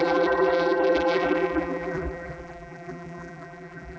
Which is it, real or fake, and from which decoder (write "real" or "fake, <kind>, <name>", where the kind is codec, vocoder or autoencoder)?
fake, vocoder, BigVGAN v2